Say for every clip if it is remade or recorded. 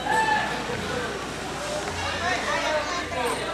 recorded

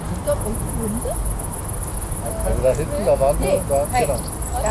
recorded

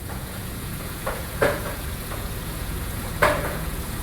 remade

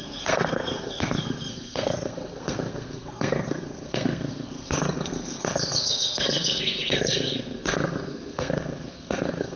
remade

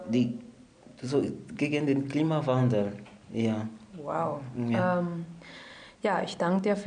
recorded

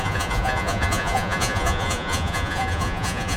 remade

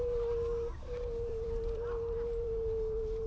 remade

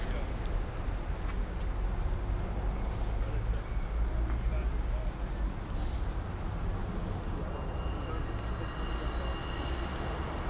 recorded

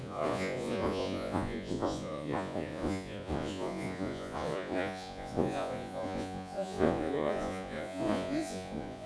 remade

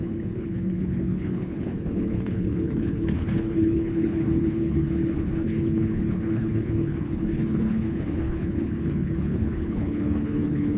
remade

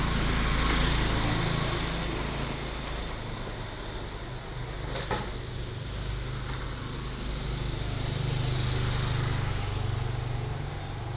recorded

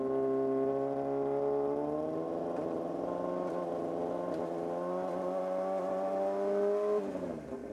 recorded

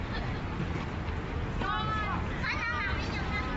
recorded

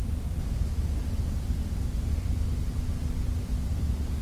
recorded